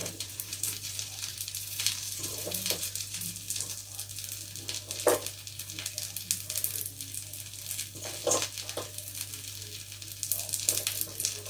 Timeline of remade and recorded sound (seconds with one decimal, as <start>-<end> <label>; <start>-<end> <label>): 0.0-3.3 remade; 3.3-11.5 recorded